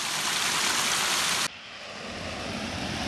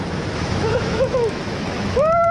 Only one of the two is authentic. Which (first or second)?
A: first